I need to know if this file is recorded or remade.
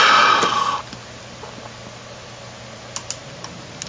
recorded